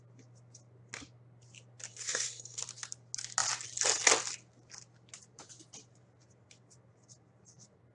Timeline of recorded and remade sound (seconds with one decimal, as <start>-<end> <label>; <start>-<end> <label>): 0.0-1.9 recorded; 1.9-2.6 remade; 2.6-7.9 recorded